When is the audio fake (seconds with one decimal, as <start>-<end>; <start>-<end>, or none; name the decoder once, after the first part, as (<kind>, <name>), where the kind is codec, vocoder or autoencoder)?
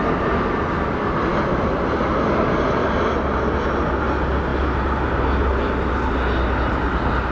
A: none